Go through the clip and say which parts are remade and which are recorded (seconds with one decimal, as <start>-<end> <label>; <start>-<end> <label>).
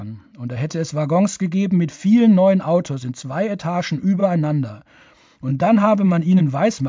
0.0-5.5 recorded; 5.5-6.4 remade; 6.4-6.9 recorded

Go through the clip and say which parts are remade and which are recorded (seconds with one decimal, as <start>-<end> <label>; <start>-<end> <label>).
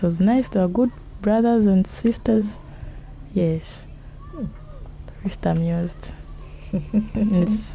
0.0-1.9 recorded; 1.9-3.0 remade; 3.0-7.7 recorded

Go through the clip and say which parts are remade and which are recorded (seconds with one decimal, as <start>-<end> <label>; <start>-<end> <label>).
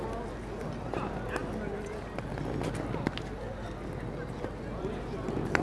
0.0-5.6 recorded